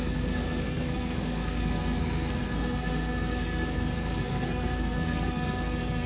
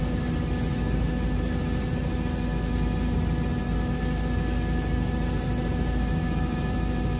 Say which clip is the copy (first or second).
first